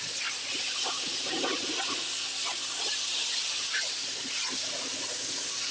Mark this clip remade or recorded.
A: recorded